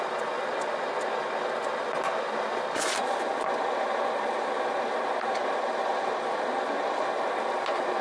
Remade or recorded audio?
recorded